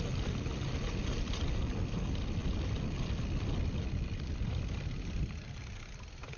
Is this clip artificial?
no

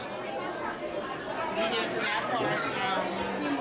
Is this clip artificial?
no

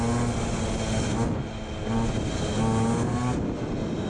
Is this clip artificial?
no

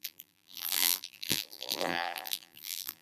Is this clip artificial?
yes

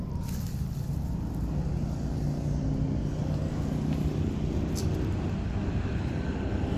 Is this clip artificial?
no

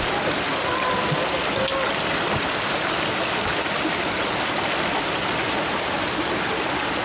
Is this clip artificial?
no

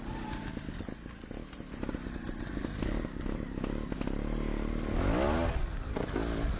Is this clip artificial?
no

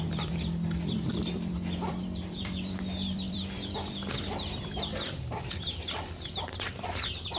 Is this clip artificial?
yes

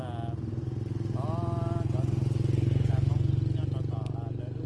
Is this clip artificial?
no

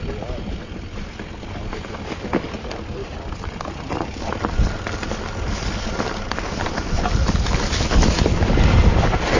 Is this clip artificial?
no